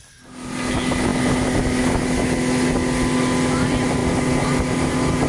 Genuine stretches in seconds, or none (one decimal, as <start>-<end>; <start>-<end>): 0.0-5.3